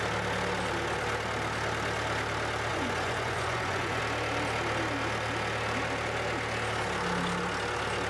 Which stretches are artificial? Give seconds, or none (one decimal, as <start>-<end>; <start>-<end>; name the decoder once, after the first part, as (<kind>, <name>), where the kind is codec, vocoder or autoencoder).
2.7-4.0 (vocoder, Vocos)